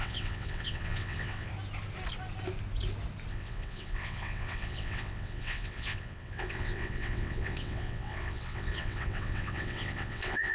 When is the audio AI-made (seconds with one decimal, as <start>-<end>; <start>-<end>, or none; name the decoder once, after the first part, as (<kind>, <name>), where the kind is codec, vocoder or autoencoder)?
0.0-1.5 (vocoder, WaveNeXt); 3.3-10.5